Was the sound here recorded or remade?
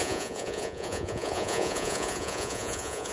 remade